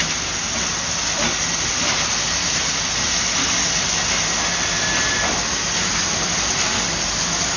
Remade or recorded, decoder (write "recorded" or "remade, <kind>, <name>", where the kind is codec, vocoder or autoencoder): recorded